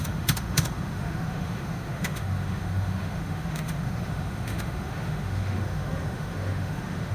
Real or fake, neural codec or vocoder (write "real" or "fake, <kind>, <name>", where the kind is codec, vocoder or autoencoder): fake, autoencoder, DAC-VAE